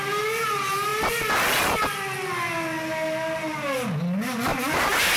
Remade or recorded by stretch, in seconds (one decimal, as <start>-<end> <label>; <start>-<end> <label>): 0.0-4.5 recorded; 4.5-5.2 remade

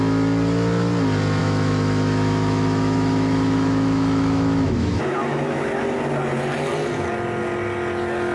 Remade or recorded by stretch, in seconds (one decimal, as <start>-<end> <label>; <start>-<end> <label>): 0.0-1.4 recorded; 1.4-5.6 remade; 5.6-8.3 recorded

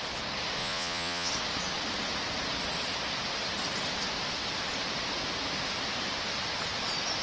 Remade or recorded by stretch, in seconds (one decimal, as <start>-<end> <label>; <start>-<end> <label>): 0.0-0.6 recorded; 0.6-1.3 remade; 1.3-7.2 recorded

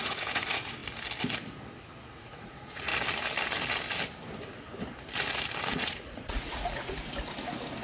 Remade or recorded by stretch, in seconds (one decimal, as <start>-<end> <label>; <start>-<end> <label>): 0.0-0.8 remade; 0.8-2.2 recorded; 2.2-2.9 remade; 2.9-5.8 recorded; 5.8-7.0 remade; 7.0-7.8 recorded